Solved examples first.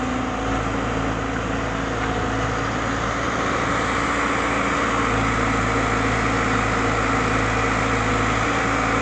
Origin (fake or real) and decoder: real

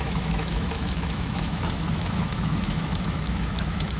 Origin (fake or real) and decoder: fake, autoencoder, DAC-VAE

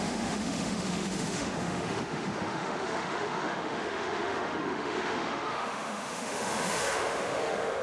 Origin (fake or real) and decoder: fake, autoencoder, DAC-VAE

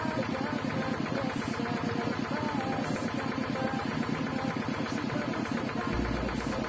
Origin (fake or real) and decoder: real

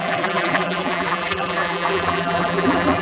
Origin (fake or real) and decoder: fake, vocoder, BigVGAN v2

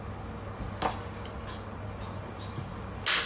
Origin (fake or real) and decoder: real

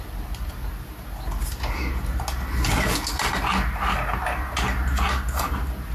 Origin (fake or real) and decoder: real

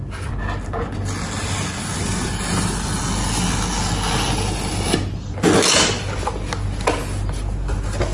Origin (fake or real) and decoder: real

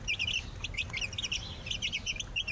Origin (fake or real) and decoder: real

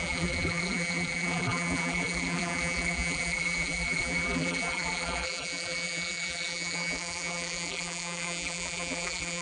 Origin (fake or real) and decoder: fake, vocoder, BigVGAN v2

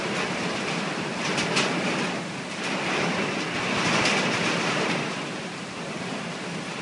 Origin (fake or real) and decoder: real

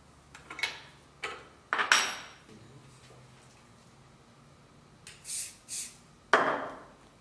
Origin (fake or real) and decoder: real